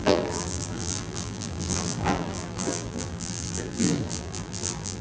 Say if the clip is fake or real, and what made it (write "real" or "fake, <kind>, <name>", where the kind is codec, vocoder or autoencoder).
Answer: fake, vocoder, BigVGAN v2